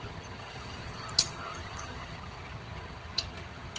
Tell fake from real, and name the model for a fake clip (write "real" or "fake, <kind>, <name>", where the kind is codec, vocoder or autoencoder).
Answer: fake, vocoder, HiFi-GAN